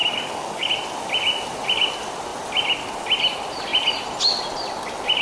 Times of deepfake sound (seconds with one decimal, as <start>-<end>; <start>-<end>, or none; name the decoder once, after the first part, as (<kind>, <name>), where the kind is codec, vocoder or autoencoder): 0.0-0.7 (codec, DAC)